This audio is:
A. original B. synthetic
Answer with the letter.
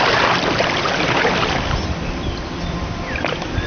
B